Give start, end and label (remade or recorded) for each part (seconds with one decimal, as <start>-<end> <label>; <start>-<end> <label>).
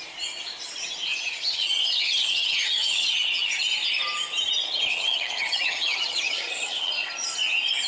0.0-1.1 recorded; 1.1-3.6 remade; 3.6-4.9 recorded; 4.9-6.9 remade; 6.9-7.9 recorded